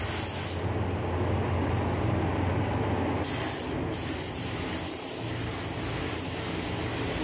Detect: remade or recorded recorded